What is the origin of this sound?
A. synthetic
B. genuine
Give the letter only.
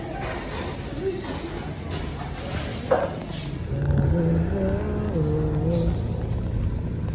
B